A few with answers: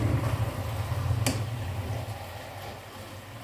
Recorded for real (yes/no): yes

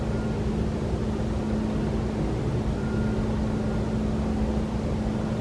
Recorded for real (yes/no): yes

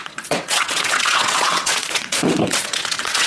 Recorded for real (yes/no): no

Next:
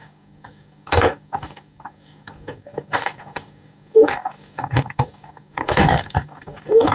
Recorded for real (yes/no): no